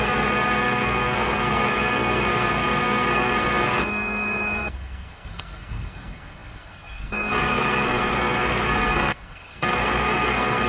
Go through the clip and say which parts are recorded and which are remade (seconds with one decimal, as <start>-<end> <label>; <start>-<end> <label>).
0.0-10.7 remade